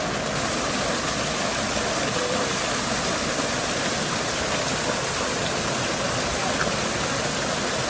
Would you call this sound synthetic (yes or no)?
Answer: no